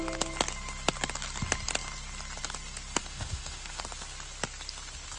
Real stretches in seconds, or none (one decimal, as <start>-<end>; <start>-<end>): 0.0-3.0; 3.8-5.2